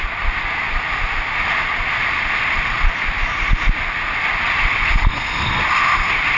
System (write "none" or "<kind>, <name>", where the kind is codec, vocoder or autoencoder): none